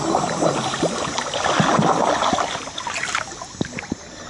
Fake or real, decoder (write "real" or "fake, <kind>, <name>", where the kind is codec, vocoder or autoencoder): real